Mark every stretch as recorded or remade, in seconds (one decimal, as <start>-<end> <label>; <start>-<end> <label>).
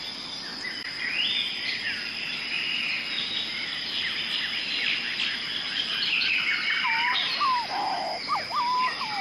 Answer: 0.0-9.2 recorded